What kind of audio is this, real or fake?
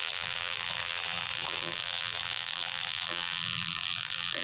fake